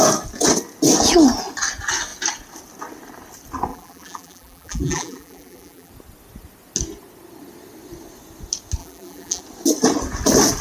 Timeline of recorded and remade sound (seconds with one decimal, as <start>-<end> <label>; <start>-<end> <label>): 0.0-3.7 recorded; 3.7-5.9 remade; 5.9-8.8 recorded; 8.8-9.4 remade; 9.4-10.6 recorded